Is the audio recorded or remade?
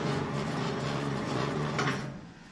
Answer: remade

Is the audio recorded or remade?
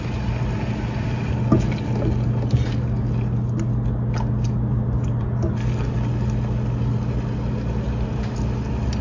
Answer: recorded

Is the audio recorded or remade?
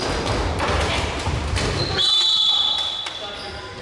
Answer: recorded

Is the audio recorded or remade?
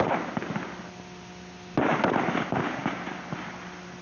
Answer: recorded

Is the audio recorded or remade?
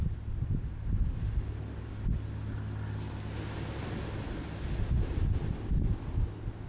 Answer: recorded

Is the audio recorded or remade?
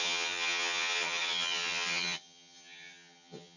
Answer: remade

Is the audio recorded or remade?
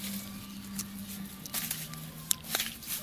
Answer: recorded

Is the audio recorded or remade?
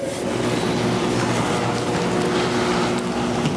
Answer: recorded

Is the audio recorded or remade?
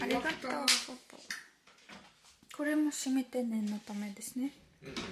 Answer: recorded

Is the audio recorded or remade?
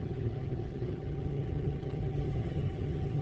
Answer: remade